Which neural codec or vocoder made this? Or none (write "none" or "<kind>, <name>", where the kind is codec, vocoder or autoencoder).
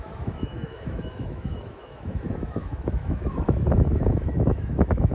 autoencoder, DAC-VAE